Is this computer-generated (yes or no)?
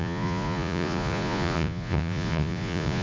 yes